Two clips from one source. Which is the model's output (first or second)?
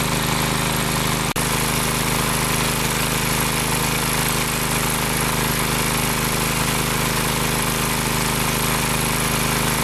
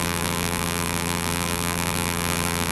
second